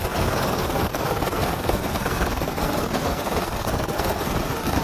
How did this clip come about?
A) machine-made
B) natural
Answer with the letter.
A